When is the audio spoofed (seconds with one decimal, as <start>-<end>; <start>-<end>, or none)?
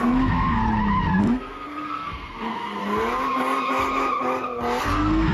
0.0-0.6; 1.2-2.8; 4.8-5.3